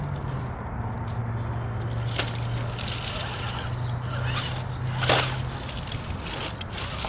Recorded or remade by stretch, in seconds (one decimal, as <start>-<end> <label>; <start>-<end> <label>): 0.0-7.1 recorded